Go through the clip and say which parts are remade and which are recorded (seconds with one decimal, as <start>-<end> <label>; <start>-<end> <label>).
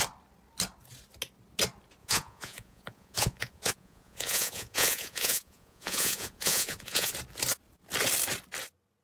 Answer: 0.0-2.0 recorded; 2.0-7.1 remade; 7.1-9.0 recorded